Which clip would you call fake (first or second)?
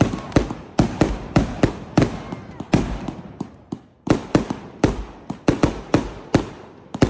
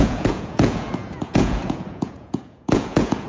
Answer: second